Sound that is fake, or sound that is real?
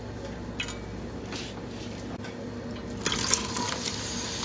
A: real